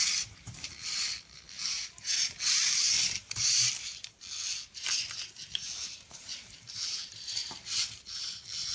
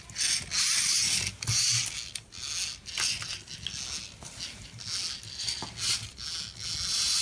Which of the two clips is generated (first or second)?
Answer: first